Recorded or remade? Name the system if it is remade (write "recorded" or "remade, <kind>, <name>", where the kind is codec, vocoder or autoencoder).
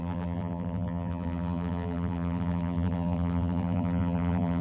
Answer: remade, vocoder, BigVGAN v2